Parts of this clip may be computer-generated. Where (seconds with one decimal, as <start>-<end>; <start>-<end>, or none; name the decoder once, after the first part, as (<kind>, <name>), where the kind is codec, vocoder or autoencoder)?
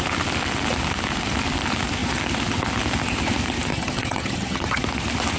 3.7-4.8 (vocoder, HiFi-GAN)